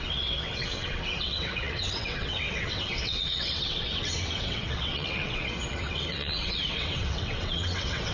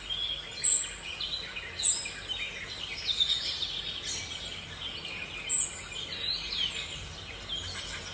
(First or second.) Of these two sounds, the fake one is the first